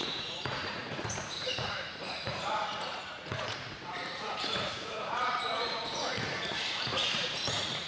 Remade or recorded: remade